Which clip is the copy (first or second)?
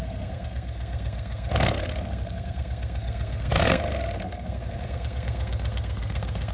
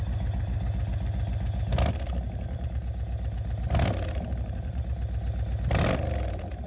first